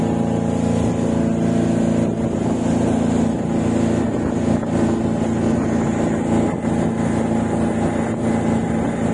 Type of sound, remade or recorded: recorded